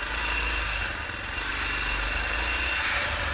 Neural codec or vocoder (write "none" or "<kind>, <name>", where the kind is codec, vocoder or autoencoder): none